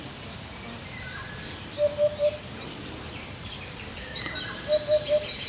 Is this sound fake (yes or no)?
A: yes